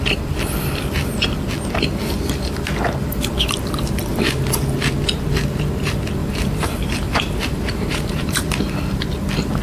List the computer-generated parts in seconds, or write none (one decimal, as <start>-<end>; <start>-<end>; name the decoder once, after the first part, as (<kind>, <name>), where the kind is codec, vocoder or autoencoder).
6.2-8.4 (vocoder, BigVGAN v2)